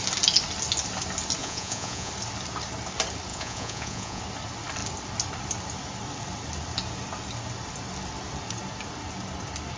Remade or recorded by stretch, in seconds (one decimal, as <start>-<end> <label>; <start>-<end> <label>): 0.0-1.4 recorded; 1.4-2.1 remade; 2.1-3.3 recorded; 3.3-4.2 remade; 4.2-9.8 recorded